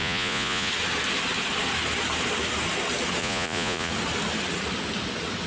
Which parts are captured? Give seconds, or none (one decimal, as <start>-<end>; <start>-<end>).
0.7-3.2; 3.9-5.5